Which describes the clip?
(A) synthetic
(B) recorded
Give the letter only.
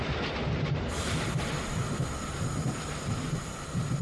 B